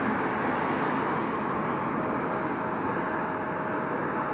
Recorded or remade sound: recorded